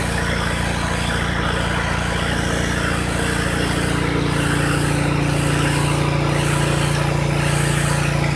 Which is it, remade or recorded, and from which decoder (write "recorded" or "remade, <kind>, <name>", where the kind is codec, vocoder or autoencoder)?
recorded